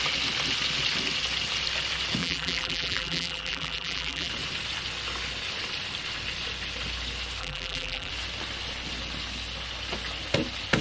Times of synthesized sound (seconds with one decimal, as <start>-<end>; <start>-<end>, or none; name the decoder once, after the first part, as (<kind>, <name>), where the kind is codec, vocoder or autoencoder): 2.2-4.3 (vocoder, BigVGAN v2); 7.4-8.1